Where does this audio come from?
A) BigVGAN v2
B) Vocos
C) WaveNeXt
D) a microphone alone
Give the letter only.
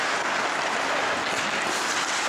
D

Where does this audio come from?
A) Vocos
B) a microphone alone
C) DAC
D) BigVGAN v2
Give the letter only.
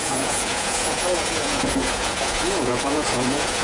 A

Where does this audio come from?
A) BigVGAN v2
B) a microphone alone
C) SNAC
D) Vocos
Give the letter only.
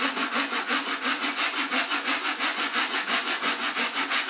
D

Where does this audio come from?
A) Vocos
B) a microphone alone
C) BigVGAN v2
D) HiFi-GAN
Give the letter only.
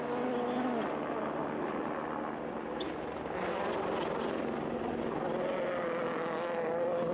B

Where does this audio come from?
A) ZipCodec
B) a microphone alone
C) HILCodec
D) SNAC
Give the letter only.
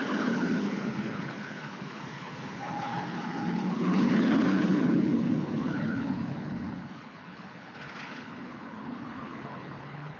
C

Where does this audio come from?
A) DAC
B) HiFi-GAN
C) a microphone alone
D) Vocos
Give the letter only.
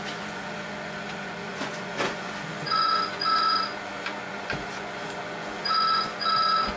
D